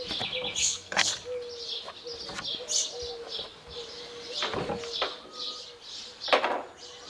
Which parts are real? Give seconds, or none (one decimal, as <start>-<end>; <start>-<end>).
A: 0.0-0.6; 1.1-7.1